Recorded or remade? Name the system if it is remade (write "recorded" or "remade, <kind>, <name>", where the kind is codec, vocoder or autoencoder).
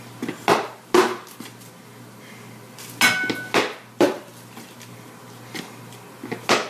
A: recorded